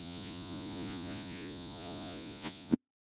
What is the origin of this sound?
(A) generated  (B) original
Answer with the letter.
A